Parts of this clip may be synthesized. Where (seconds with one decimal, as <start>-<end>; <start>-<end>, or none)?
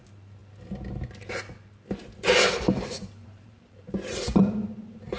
2.0-4.4